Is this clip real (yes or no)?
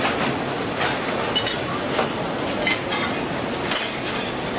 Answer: yes